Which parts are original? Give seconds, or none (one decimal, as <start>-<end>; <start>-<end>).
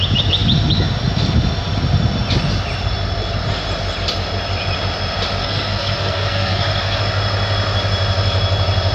0.0-5.4; 7.0-8.9